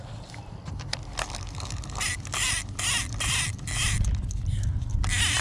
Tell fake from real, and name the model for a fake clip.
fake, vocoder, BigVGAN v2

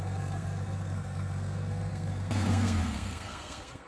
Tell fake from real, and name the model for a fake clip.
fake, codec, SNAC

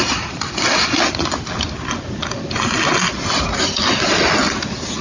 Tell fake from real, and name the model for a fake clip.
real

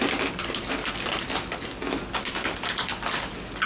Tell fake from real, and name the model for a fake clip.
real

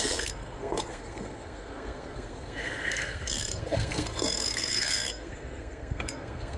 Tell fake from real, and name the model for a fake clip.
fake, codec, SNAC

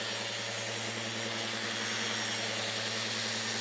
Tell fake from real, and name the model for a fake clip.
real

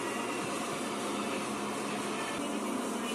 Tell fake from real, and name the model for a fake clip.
real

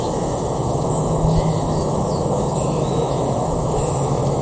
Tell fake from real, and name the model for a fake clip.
fake, autoencoder, DAC-VAE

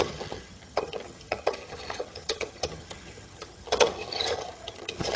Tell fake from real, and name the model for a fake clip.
fake, vocoder, HiFi-GAN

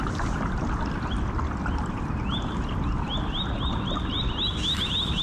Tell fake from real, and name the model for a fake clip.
real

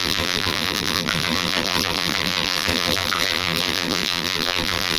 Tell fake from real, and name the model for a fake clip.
fake, vocoder, BigVGAN v2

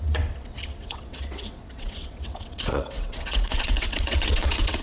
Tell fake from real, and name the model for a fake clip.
fake, vocoder, WaveNeXt